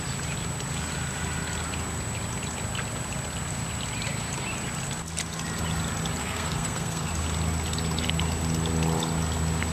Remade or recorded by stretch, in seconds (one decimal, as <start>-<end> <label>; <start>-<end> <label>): 0.0-6.2 recorded; 6.2-7.1 remade; 7.1-9.7 recorded